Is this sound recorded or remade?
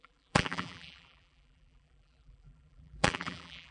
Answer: remade